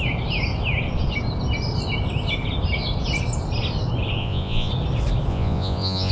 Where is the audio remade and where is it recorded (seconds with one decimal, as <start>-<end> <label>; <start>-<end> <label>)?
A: 0.0-4.2 recorded; 4.2-4.7 remade; 4.7-5.3 recorded; 5.3-6.1 remade